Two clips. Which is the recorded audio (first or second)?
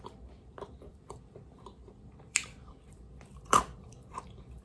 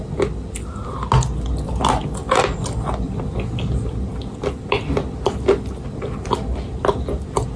second